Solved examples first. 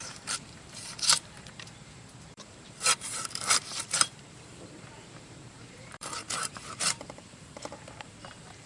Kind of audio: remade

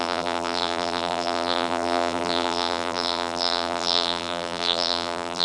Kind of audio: remade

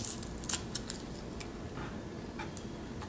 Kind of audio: recorded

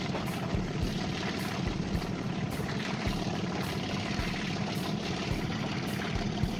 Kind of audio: remade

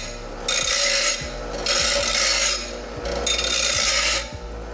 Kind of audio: recorded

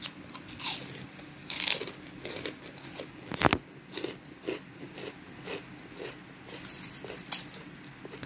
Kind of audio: recorded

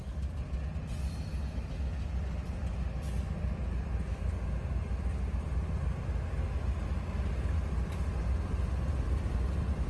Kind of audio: recorded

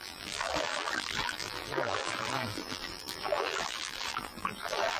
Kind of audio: remade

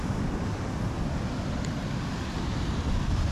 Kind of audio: remade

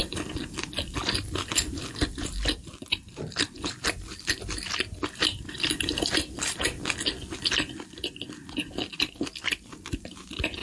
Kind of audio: recorded